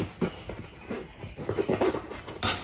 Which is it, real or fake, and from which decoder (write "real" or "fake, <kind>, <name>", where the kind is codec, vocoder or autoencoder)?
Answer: real